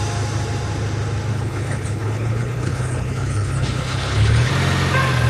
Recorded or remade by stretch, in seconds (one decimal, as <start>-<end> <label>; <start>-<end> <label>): 0.0-1.3 recorded; 1.3-4.5 remade; 4.5-5.3 recorded